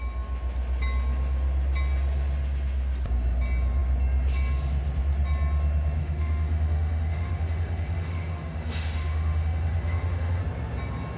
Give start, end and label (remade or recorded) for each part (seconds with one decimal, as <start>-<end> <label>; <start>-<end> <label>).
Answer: 0.0-6.0 recorded; 6.0-10.4 remade; 10.4-11.2 recorded